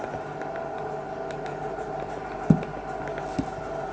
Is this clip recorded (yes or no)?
yes